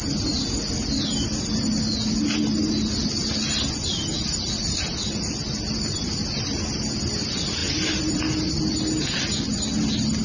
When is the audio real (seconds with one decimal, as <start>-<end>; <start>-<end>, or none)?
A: 0.0-7.6; 8.2-10.2